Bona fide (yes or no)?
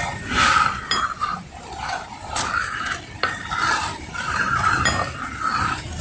yes